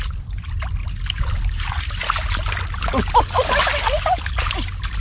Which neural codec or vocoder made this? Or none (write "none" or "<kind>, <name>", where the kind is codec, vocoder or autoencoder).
none